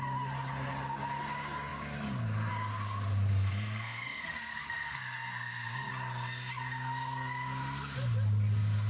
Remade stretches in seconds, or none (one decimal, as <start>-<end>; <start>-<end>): 3.3-5.9